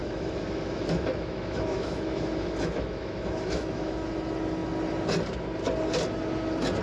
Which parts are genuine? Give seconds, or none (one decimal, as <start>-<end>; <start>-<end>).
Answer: 4.1-6.8